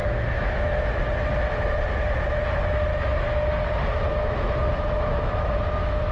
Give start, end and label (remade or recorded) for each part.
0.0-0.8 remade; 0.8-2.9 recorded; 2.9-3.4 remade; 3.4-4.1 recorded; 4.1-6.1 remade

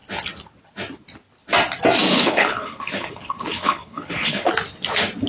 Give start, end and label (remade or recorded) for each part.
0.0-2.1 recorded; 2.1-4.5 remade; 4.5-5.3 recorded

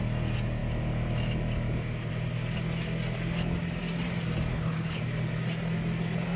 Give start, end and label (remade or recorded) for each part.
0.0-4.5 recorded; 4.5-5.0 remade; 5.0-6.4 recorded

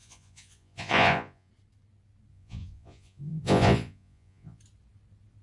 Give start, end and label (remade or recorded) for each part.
0.0-1.5 remade; 1.5-2.3 recorded; 2.3-4.6 remade; 4.6-5.4 recorded

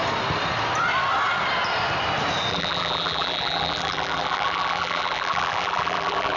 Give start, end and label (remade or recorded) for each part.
0.0-2.5 recorded; 2.5-6.4 remade

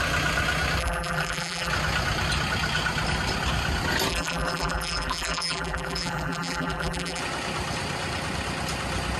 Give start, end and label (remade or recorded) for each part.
0.0-0.8 recorded; 0.8-1.7 remade; 1.7-4.1 recorded; 4.1-7.2 remade; 7.2-9.2 recorded